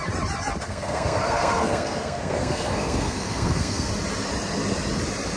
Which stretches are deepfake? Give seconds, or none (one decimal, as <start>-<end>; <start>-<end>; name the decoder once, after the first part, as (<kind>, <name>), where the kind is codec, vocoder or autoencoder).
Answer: 0.7-3.9 (codec, SNAC)